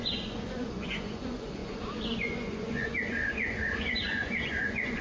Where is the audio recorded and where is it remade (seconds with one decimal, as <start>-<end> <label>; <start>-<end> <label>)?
0.0-5.0 remade

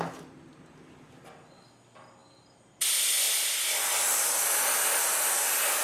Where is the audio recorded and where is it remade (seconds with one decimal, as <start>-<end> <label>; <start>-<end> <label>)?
0.0-5.8 recorded